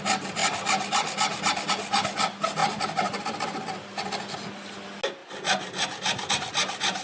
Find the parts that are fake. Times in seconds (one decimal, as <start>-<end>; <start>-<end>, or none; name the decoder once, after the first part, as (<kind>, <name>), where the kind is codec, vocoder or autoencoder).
none